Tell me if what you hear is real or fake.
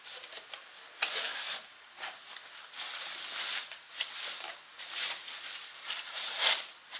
real